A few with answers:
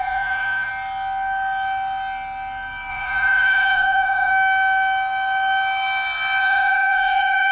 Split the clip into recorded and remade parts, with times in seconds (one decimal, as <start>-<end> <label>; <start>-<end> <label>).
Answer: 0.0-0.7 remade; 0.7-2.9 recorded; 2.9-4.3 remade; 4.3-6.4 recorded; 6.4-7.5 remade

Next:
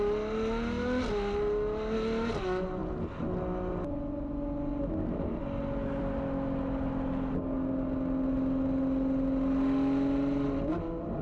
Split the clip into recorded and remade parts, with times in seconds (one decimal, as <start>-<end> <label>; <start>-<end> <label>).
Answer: 0.0-11.2 recorded

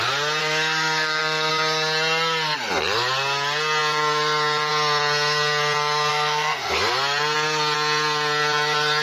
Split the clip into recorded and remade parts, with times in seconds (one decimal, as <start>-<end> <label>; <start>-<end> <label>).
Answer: 0.0-0.4 recorded; 0.4-1.5 remade; 1.5-6.1 recorded; 6.1-6.7 remade; 6.7-9.0 recorded

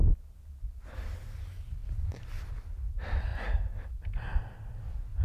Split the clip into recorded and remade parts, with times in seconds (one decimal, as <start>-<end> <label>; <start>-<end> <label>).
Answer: 0.0-1.8 recorded; 1.8-2.4 remade; 2.4-5.2 recorded

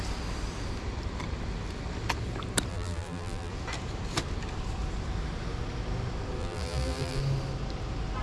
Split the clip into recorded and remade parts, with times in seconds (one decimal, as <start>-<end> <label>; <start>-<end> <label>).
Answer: 0.0-2.7 recorded; 2.7-3.5 remade; 3.5-6.4 recorded; 6.4-7.2 remade; 7.2-8.2 recorded

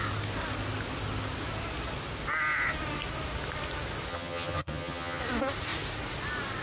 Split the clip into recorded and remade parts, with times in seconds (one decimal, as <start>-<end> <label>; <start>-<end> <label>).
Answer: 0.0-4.1 recorded; 4.1-5.2 remade; 5.2-6.6 recorded

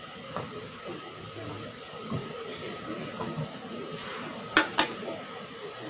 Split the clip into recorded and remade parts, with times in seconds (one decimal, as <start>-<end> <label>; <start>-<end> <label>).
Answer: 0.0-5.9 recorded